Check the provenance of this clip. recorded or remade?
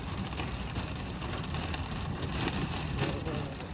recorded